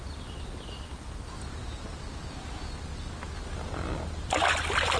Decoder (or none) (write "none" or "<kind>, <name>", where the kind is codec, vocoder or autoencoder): none